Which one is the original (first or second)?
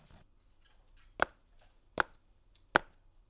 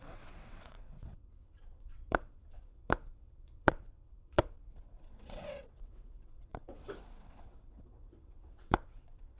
first